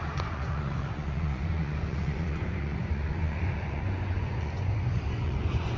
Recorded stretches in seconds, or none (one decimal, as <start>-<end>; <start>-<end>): none

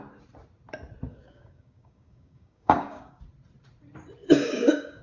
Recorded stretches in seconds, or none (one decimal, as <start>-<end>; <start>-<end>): 0.0-1.1; 3.2-4.2

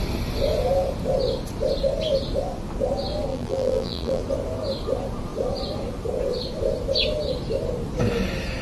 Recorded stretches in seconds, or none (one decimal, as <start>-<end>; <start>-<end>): 0.0-3.3; 4.2-8.6

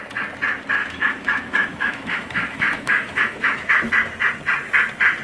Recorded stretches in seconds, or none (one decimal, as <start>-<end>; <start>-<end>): 0.0-0.8; 3.9-5.2